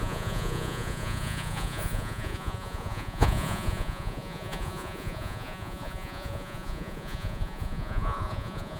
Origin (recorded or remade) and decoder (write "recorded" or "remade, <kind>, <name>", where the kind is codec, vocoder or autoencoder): remade, vocoder, Vocos